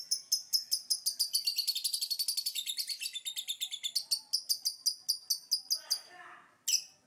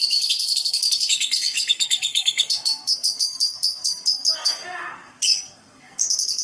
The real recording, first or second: first